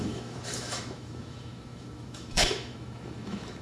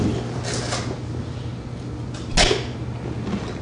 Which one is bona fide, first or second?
second